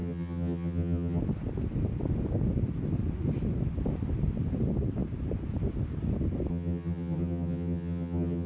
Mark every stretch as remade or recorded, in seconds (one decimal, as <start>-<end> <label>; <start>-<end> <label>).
0.0-1.2 remade; 1.2-6.5 recorded; 6.5-8.5 remade